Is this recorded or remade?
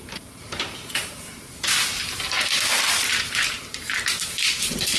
remade